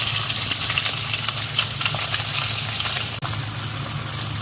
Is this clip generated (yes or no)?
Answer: no